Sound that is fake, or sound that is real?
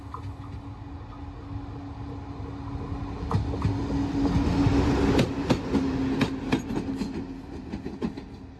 real